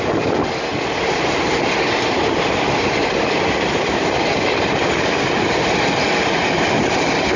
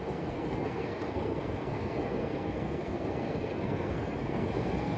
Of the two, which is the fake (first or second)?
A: second